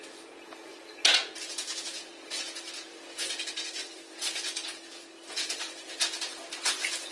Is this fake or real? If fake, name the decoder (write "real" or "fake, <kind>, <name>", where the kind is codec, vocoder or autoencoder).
fake, vocoder, Vocos